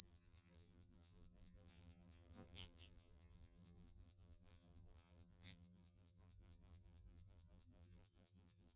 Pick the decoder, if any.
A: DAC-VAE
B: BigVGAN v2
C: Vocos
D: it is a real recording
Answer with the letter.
B